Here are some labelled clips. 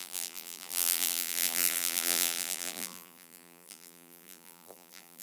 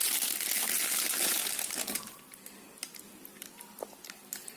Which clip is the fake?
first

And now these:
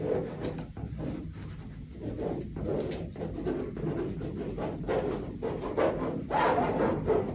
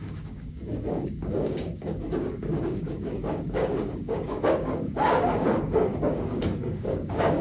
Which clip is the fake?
second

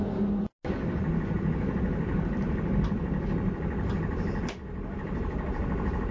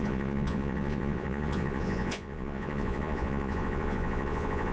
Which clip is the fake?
second